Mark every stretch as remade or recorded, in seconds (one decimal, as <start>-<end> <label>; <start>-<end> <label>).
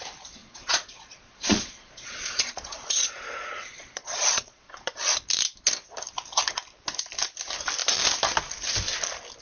0.0-0.4 recorded; 0.4-5.1 remade; 5.1-9.4 recorded